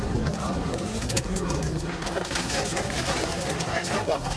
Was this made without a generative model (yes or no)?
no